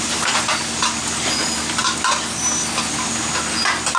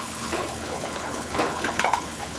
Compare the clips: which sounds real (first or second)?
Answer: first